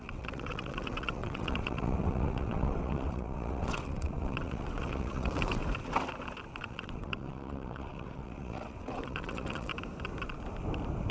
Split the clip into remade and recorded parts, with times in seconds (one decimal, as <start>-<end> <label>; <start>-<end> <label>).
0.0-5.6 remade; 5.6-6.6 recorded; 6.6-9.7 remade; 9.7-11.1 recorded